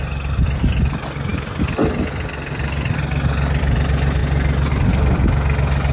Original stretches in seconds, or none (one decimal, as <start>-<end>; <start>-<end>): 0.0-5.9